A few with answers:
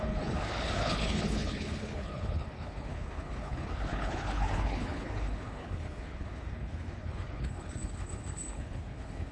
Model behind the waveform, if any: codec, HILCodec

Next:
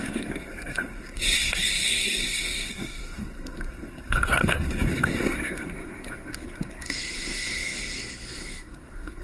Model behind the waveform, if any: codec, SNAC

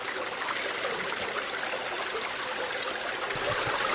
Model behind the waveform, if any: none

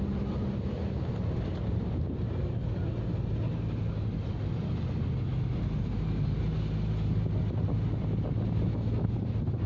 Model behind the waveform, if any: none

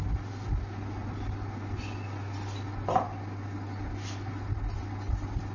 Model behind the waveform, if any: none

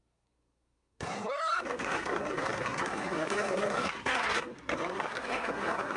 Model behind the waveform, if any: codec, SNAC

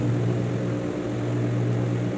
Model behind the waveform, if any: none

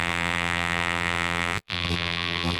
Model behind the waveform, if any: vocoder, BigVGAN v2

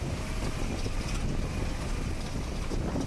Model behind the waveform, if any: none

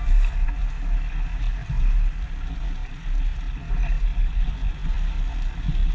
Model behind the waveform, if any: none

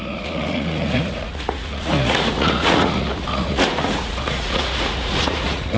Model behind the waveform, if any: vocoder, Vocos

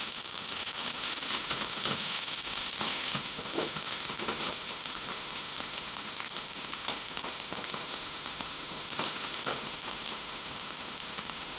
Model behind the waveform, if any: autoencoder, DAC-VAE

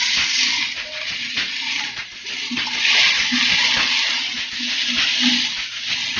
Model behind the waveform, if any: none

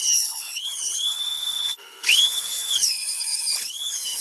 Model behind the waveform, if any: codec, HILCodec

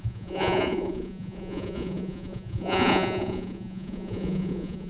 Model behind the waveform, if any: vocoder, Vocos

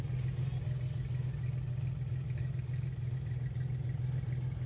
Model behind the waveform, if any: none